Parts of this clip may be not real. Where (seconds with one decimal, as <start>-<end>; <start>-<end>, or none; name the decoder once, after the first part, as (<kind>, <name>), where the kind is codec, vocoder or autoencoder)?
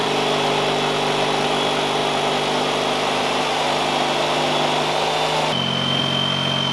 none